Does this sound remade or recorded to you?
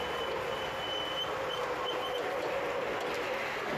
recorded